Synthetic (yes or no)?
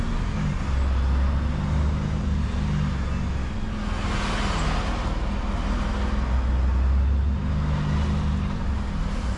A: no